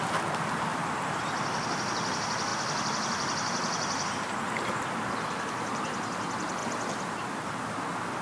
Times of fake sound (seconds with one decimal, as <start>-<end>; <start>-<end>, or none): 0.7-1.2; 6.6-7.4